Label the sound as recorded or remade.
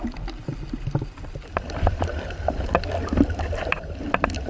recorded